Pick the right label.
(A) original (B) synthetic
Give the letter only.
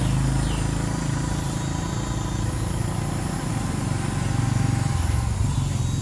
A